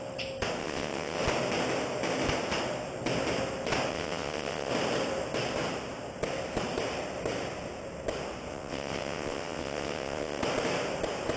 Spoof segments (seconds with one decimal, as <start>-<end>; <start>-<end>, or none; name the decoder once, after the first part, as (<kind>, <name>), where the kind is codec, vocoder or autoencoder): 0.6-1.2 (vocoder, WaveNeXt); 3.9-4.7; 8.5-10.4

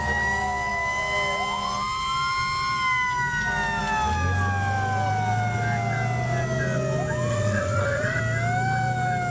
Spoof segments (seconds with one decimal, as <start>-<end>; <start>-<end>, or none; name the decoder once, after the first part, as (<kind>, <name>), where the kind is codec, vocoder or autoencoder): 7.3-8.2 (vocoder, WaveNeXt)

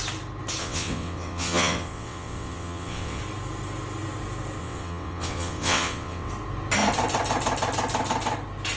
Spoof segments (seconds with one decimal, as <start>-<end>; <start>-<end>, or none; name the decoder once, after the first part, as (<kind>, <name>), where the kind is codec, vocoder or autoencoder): 0.6-3.2 (vocoder, WaveNeXt); 4.6-6.3